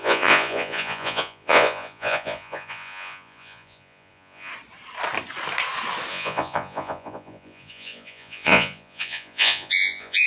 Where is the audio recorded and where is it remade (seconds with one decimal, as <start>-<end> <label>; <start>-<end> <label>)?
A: 0.0-4.5 remade; 4.5-6.1 recorded; 6.1-10.3 remade